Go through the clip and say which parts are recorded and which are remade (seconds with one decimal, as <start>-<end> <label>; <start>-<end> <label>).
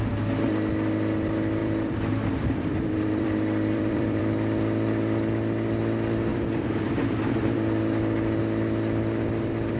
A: 0.0-1.6 recorded; 1.6-4.2 remade; 4.2-6.3 recorded; 6.3-8.4 remade; 8.4-9.8 recorded